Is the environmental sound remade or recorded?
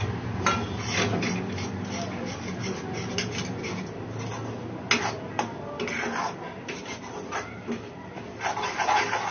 recorded